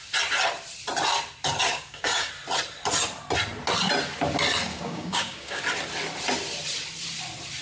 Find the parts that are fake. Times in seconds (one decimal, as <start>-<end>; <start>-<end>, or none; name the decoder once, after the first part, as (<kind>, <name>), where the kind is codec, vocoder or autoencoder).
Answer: 1.7-2.3 (codec, DAC); 4.7-5.6